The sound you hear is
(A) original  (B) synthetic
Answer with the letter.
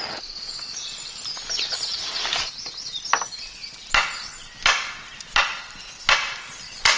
A